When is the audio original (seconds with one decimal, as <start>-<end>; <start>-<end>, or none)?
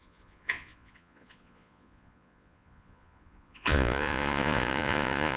none